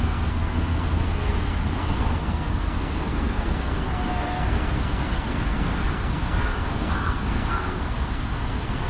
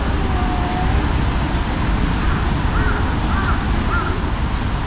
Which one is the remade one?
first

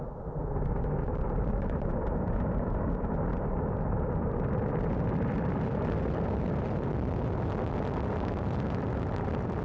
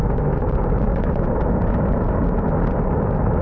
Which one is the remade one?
first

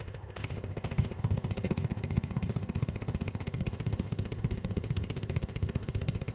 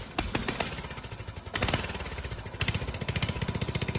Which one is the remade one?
first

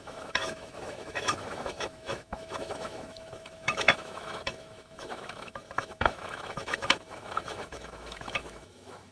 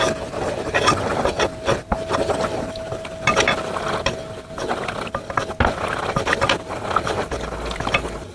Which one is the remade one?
first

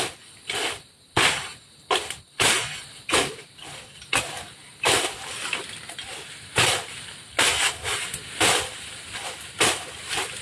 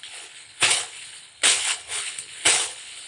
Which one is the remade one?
second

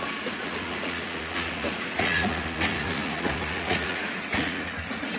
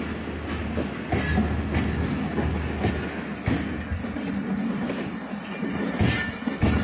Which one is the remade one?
first